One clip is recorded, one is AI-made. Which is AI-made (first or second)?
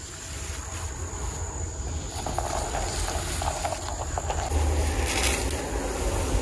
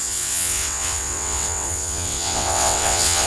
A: second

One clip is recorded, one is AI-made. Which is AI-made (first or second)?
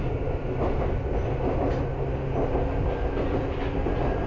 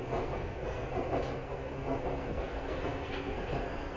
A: second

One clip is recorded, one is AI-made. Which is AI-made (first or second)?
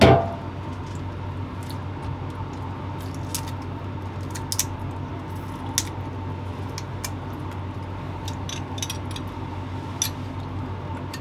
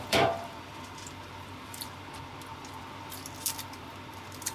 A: second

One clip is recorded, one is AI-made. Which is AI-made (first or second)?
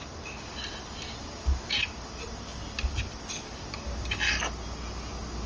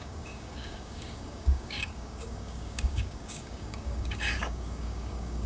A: second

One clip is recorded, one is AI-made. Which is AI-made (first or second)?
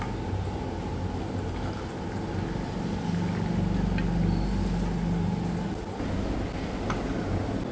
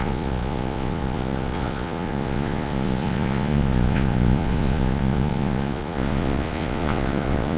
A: second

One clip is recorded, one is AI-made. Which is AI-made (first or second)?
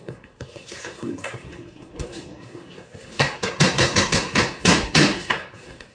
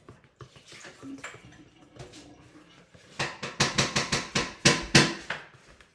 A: first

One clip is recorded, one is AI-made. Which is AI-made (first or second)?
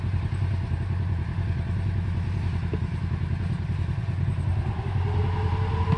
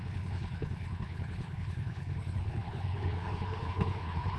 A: second